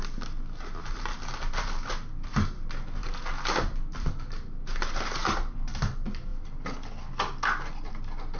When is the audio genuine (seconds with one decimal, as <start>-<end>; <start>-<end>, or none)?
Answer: 0.0-8.4

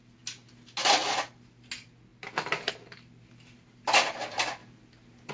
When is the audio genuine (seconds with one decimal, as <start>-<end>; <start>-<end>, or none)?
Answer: 0.0-5.3

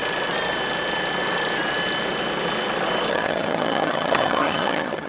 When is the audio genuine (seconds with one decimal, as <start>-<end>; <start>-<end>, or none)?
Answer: 0.0-3.1

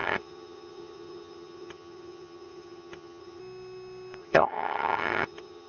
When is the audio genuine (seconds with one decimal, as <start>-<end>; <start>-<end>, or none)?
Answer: 3.4-4.2

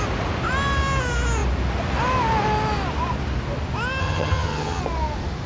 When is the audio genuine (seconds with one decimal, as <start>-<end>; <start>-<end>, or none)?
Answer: 0.0-4.0; 4.8-5.5